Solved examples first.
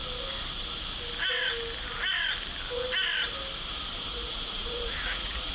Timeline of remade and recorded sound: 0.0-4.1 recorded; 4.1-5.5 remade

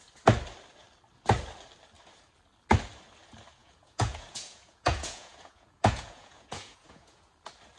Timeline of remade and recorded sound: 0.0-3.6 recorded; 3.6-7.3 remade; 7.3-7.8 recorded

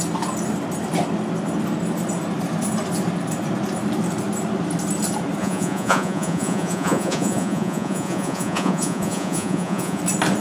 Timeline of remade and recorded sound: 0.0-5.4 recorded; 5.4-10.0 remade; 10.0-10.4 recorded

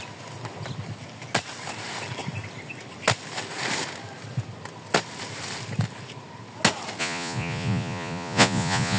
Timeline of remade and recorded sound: 0.0-7.0 recorded; 7.0-9.0 remade

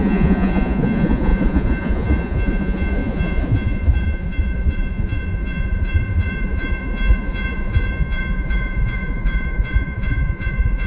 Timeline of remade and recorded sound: 0.0-10.9 remade

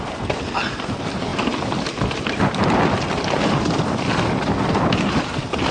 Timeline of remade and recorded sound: 0.0-5.7 recorded

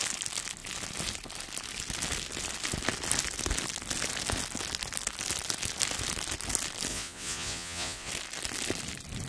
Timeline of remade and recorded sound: 0.0-6.9 recorded; 6.9-8.1 remade; 8.1-9.3 recorded